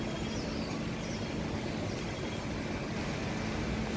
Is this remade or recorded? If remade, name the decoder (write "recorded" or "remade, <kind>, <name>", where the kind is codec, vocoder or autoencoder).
recorded